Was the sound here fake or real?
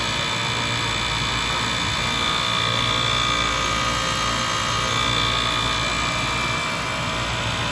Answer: real